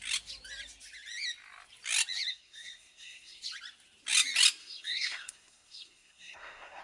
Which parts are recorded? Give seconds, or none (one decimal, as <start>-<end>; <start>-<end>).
0.0-2.3; 3.4-4.6